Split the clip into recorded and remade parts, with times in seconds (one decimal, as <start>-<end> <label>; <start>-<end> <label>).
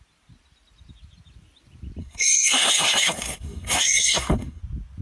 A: 0.0-2.0 recorded; 2.0-4.6 remade; 4.6-5.0 recorded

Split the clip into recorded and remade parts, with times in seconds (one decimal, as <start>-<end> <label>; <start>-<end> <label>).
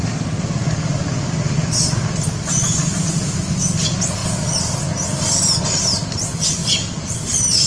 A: 0.0-7.7 recorded